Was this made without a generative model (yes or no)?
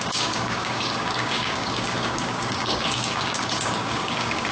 no